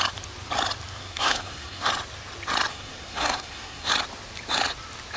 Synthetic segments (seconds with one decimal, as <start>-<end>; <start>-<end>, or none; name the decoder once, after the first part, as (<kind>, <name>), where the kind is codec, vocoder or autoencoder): 1.0-1.9 (codec, SNAC); 2.7-3.9